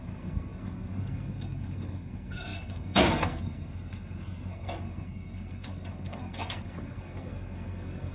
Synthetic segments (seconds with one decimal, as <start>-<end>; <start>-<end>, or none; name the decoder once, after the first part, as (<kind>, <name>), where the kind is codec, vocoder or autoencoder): 0.0-8.1 (codec, SNAC)